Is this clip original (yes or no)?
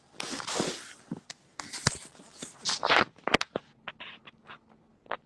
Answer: yes